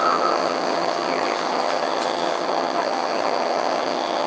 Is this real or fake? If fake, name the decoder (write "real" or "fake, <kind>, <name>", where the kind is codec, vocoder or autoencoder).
fake, vocoder, HiFi-GAN